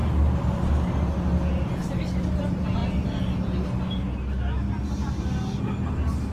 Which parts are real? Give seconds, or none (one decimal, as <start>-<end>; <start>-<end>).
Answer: 0.0-6.3